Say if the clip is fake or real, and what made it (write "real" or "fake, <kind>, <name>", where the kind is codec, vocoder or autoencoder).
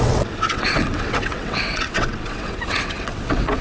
fake, vocoder, WaveNeXt